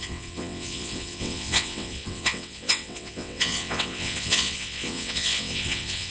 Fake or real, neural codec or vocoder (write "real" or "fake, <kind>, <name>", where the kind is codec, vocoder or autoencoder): fake, vocoder, WaveNeXt